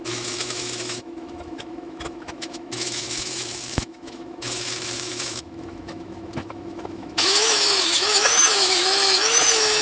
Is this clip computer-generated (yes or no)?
yes